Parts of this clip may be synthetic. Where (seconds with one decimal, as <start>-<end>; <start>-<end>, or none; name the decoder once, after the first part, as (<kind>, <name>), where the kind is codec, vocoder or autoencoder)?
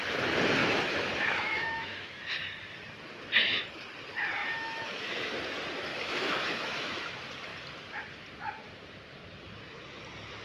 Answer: 0.6-2.1 (autoencoder, DAC-VAE); 4.4-5.3; 5.9-7.1